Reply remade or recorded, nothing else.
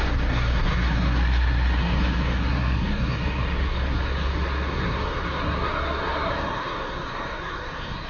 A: remade